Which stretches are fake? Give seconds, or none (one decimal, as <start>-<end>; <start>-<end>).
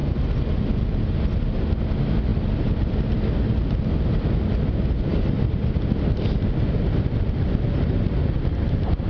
none